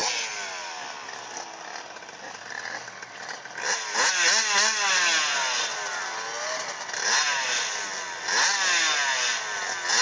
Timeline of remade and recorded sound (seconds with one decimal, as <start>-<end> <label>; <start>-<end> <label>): 0.0-10.0 recorded